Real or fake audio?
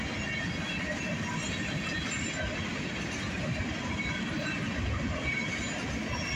real